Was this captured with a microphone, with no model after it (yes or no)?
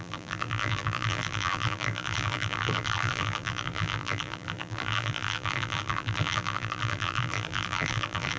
no